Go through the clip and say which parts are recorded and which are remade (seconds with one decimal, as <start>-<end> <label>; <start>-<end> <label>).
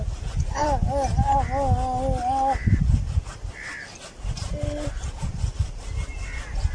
0.0-6.7 recorded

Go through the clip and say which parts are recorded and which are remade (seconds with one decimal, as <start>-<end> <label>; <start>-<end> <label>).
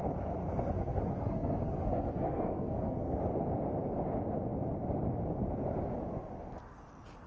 0.0-0.4 recorded; 0.4-3.2 remade; 3.2-7.3 recorded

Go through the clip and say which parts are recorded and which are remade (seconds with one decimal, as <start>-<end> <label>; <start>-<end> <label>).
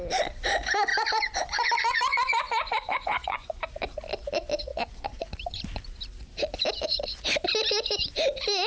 0.0-0.9 recorded; 0.9-3.6 remade; 3.6-4.7 recorded; 4.7-5.2 remade; 5.2-8.7 recorded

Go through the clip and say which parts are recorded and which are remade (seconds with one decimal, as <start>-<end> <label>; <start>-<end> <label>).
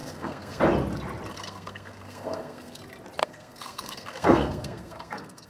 0.0-0.6 remade; 0.6-1.3 recorded; 1.3-2.8 remade; 2.8-3.2 recorded; 3.2-5.5 remade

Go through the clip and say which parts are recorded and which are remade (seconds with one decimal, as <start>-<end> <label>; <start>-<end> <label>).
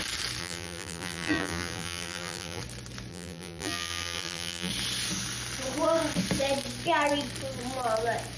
0.0-0.4 recorded; 0.4-2.6 remade; 2.6-3.1 recorded; 3.1-4.7 remade; 4.7-8.4 recorded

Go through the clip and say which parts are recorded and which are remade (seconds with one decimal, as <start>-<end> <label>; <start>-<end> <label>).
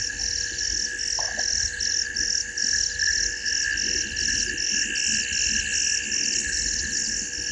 0.0-7.5 recorded